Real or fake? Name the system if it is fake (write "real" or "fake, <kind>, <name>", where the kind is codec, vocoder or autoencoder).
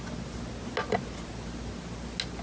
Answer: real